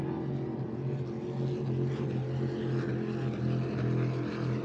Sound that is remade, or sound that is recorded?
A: recorded